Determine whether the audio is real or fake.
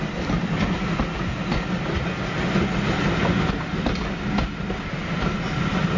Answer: real